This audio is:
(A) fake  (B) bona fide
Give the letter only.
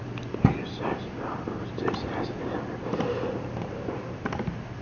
B